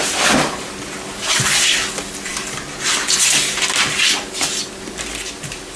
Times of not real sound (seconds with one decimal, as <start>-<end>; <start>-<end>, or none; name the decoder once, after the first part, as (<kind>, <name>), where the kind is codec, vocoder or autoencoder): none